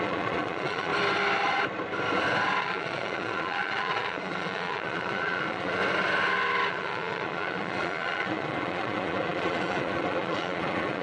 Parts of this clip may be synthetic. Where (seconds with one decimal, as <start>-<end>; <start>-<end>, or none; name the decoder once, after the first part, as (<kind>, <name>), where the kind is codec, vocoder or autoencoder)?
0.0-0.9 (vocoder, Vocos); 2.6-5.8; 6.7-11.0

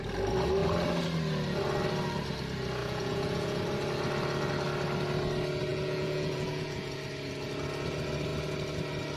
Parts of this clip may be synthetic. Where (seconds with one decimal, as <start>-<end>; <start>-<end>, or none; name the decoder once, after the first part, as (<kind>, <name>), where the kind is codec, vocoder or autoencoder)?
2.8-3.6 (vocoder, Vocos); 5.7-7.0

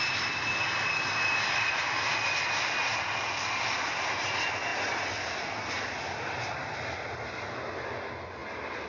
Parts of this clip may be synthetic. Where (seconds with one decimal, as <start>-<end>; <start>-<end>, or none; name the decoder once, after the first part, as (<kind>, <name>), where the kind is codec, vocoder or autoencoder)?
none

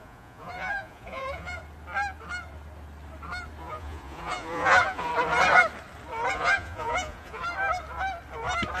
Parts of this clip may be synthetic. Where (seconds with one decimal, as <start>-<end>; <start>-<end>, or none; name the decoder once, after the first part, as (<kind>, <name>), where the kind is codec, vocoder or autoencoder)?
0.0-1.6 (vocoder, Vocos); 3.6-5.1; 6.3-7.4

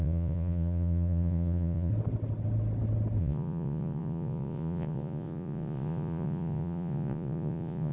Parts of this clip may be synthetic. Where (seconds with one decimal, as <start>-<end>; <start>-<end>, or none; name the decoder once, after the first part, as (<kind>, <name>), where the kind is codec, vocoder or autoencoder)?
0.0-1.9 (vocoder, Vocos); 3.2-7.9

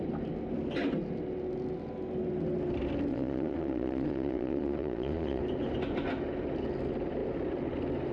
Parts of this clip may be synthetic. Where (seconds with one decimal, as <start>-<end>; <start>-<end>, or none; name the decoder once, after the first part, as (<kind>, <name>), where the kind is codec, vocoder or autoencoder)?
3.1-5.4 (vocoder, Vocos)

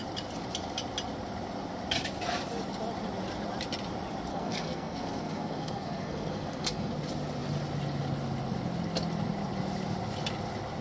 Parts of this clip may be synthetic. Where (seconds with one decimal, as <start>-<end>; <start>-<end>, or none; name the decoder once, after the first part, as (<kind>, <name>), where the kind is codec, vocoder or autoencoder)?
4.3-6.9 (codec, SNAC)

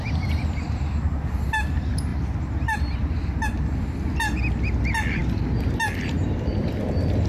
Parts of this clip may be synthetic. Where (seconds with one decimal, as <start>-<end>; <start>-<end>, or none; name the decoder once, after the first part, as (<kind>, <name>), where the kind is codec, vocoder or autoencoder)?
none